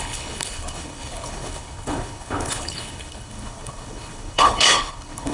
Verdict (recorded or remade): remade